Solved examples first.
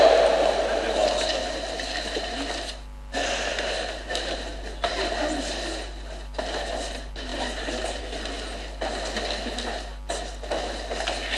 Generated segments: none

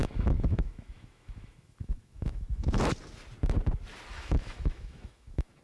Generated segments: 0.0-2.9 (autoencoder, DAC-VAE); 4.1-5.6

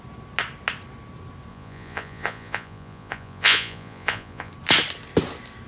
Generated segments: 1.5-4.5 (vocoder, Vocos)

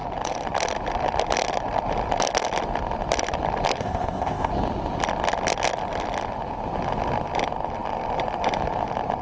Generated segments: 3.8-4.5 (codec, ZipCodec)